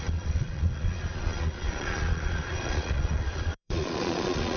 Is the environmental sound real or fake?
fake